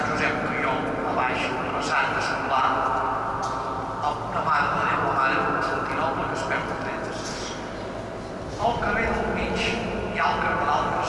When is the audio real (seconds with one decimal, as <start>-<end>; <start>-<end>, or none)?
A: 0.0-11.1